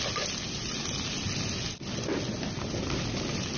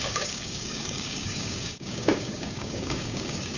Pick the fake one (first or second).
second